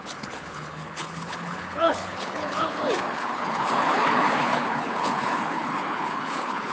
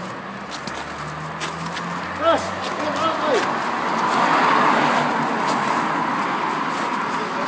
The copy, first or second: first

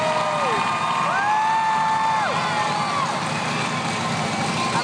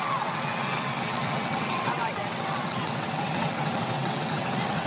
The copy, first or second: second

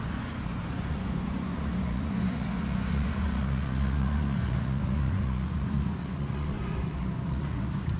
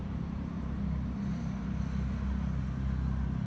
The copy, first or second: first